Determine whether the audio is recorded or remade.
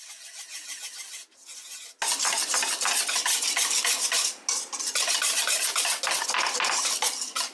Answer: recorded